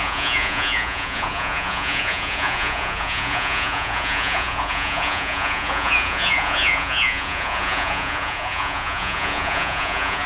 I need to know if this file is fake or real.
fake